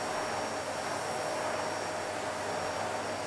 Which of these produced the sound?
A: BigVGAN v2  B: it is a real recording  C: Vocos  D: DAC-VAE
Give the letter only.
B